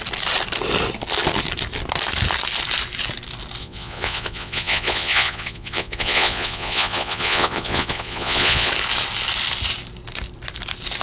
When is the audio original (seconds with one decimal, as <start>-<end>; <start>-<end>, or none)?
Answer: 0.0-3.6; 8.7-11.0